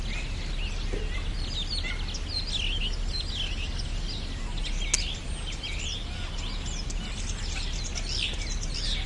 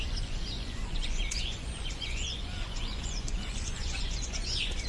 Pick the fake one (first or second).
second